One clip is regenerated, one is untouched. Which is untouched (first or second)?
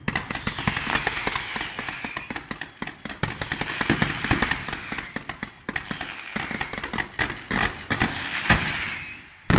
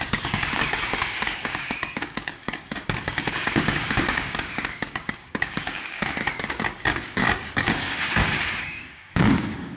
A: first